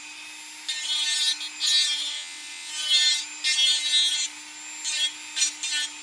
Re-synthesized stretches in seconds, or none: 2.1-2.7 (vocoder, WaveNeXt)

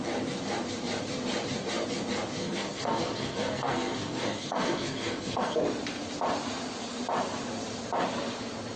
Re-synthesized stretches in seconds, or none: 2.4-5.6 (codec, SNAC)

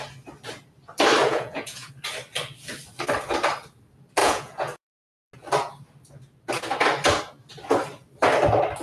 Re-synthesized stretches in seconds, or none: 1.2-1.9 (vocoder, Vocos); 4.2-5.3

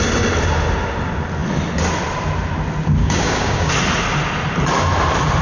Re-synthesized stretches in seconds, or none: 3.0-3.7 (codec, DAC)

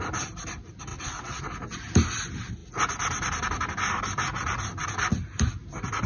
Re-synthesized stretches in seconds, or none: 0.9-1.4 (vocoder, WaveNeXt)

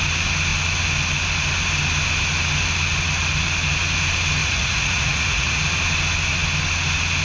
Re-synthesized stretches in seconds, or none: 4.4-5.6 (vocoder, Vocos)